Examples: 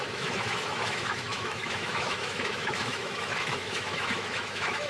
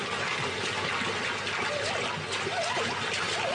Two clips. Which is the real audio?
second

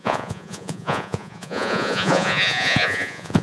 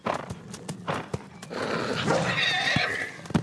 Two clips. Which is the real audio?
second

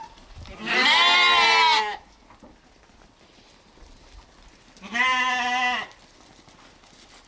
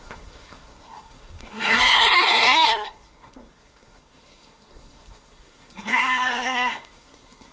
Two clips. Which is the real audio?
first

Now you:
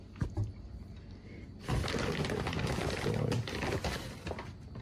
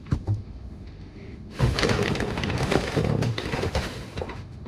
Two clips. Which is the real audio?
first